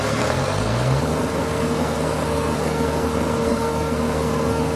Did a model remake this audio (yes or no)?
yes